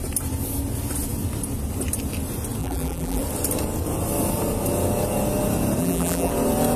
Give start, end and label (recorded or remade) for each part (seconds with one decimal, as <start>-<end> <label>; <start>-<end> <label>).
0.0-2.6 recorded; 2.6-3.2 remade; 3.2-5.8 recorded; 5.8-6.3 remade; 6.3-6.8 recorded